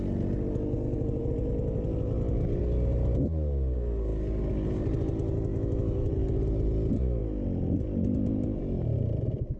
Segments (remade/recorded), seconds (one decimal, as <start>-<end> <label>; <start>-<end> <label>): 0.0-5.5 recorded; 5.5-6.1 remade; 6.1-9.6 recorded